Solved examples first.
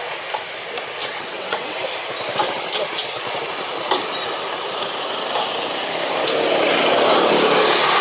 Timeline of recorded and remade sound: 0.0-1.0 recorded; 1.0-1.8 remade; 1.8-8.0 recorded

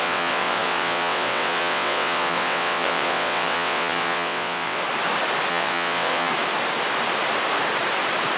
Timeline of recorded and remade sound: 0.0-4.8 remade; 4.8-5.5 recorded; 5.5-6.3 remade; 6.3-8.4 recorded

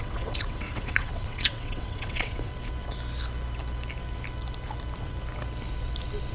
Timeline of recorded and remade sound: 0.0-2.5 remade; 2.5-6.3 recorded

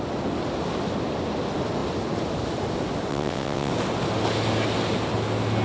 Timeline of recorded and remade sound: 0.0-3.1 recorded; 3.1-3.7 remade; 3.7-5.6 recorded

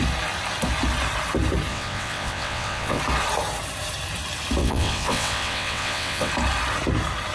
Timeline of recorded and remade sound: 0.0-1.7 recorded; 1.7-3.0 remade; 3.0-4.6 recorded; 4.6-6.3 remade; 6.3-7.3 recorded